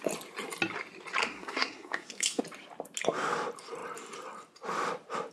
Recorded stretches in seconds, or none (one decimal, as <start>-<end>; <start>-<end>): 0.0-1.2; 2.4-5.3